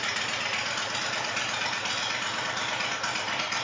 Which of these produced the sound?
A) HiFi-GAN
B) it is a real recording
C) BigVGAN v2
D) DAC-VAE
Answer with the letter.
B